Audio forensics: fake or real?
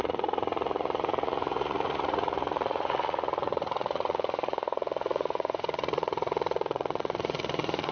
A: fake